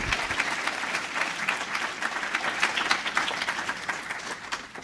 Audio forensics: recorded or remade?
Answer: recorded